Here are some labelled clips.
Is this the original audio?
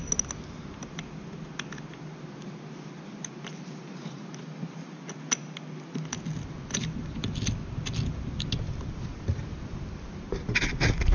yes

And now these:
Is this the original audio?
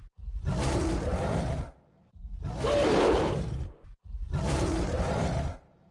no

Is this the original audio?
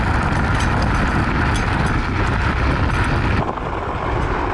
yes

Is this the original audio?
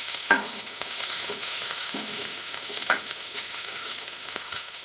no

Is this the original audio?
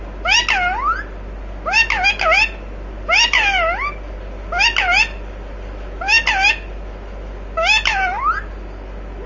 yes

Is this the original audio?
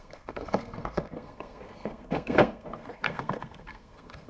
no